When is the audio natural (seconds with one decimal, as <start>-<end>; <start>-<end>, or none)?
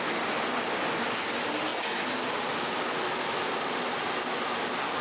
0.0-5.0